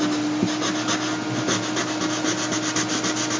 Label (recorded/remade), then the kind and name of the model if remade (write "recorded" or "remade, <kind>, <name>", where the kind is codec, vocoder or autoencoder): recorded